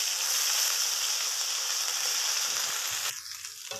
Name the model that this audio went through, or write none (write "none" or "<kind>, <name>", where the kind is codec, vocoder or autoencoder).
none